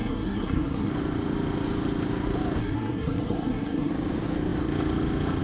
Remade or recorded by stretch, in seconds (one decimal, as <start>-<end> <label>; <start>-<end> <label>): 0.0-0.9 remade; 0.9-2.6 recorded; 2.6-3.9 remade; 3.9-5.4 recorded